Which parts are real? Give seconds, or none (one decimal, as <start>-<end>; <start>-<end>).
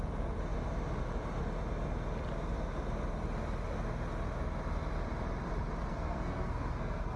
0.0-5.9